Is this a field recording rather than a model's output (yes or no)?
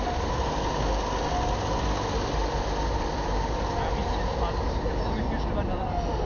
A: yes